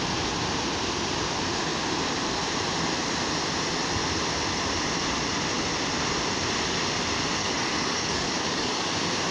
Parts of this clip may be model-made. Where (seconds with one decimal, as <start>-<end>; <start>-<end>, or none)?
7.4-8.9